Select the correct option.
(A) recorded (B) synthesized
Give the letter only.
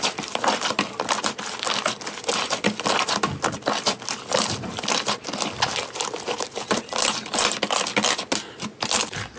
A